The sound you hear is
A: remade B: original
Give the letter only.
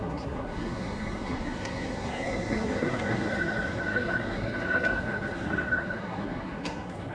A